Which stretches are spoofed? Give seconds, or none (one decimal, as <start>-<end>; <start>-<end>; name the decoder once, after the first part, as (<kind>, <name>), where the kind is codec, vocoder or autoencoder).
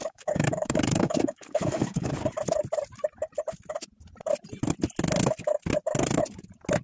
0.0-2.1 (codec, DAC)